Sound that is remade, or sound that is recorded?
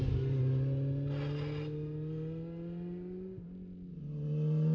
recorded